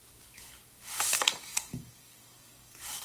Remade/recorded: remade